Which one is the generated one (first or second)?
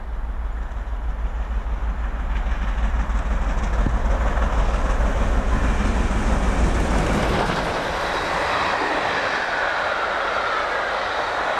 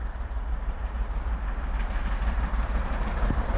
second